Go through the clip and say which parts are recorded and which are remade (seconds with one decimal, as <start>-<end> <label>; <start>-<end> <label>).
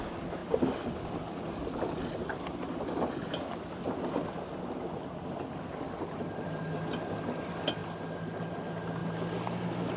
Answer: 0.0-10.0 recorded